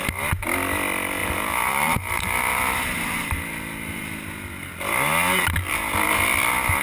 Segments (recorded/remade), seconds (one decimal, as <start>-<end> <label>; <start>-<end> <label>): 0.0-1.2 recorded; 1.2-4.0 remade; 4.0-6.8 recorded